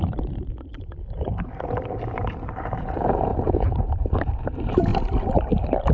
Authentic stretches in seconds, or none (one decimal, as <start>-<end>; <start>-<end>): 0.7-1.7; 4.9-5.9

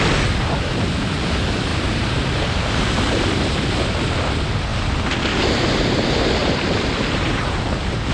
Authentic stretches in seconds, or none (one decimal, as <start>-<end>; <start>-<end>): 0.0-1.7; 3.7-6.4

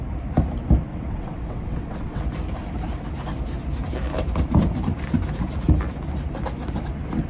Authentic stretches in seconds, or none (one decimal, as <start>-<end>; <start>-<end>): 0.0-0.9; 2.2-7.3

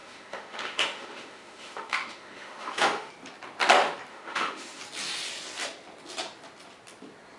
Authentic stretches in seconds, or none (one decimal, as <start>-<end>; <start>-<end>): 3.1-4.1; 4.8-7.4

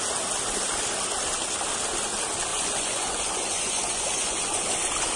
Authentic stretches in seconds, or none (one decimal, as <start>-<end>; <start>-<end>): 0.0-2.5; 4.7-5.2

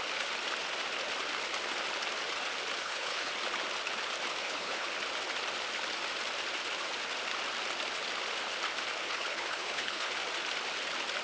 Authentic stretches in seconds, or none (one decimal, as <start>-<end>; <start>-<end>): 0.0-2.8; 3.3-4.4; 4.9-9.0; 10.1-11.2